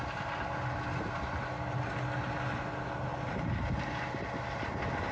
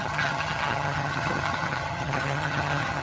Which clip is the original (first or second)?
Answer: first